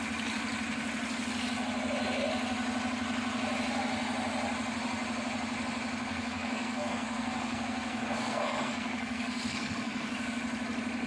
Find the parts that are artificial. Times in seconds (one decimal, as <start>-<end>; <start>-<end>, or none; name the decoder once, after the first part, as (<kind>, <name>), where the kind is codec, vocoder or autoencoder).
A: 6.1-10.4 (codec, SNAC)

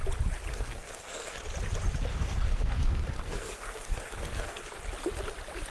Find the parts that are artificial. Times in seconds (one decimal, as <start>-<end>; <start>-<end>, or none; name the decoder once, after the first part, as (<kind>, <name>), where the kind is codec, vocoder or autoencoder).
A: 0.5-1.4 (codec, SNAC); 2.1-4.8

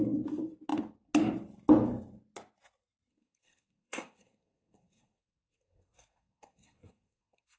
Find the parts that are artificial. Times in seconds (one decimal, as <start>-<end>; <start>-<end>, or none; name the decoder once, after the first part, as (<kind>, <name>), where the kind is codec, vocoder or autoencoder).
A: 3.1-7.6 (codec, SNAC)

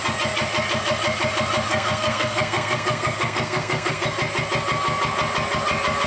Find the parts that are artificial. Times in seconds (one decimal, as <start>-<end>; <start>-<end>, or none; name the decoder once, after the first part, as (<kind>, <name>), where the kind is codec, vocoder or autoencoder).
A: 1.7-4.0 (codec, SNAC)

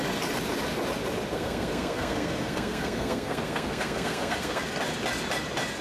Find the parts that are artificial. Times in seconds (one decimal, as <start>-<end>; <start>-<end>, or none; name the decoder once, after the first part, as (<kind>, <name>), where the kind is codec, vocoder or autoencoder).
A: 1.3-4.6 (codec, SNAC)

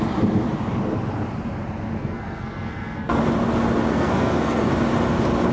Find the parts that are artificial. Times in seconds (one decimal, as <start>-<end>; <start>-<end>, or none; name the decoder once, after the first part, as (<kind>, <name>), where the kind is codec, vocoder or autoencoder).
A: 2.0-3.2 (codec, SNAC); 3.9-4.7